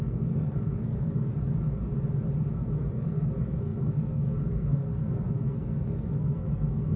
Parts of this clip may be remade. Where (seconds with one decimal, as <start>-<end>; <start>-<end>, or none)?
0.0-1.3; 2.5-7.0